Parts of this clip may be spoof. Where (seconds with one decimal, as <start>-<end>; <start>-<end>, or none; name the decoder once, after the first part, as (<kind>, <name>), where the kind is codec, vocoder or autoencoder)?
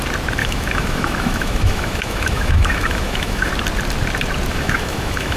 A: 0.4-3.5 (autoencoder, DAC-VAE); 4.5-5.4